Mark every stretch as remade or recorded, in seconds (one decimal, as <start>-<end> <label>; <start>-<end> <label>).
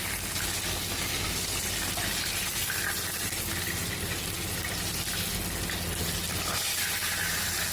0.0-7.7 recorded